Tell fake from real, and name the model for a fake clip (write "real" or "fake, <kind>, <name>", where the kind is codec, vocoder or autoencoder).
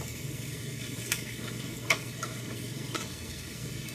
fake, codec, SNAC